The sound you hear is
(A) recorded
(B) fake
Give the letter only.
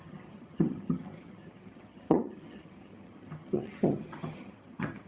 B